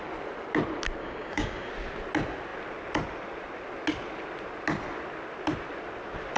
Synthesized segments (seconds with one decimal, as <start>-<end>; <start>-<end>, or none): 1.0-1.7